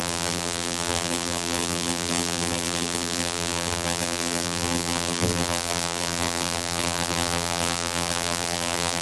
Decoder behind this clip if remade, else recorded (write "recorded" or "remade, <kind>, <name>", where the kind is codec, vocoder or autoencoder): remade, vocoder, BigVGAN v2